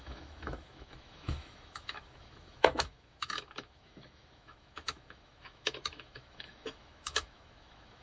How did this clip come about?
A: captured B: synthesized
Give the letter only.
B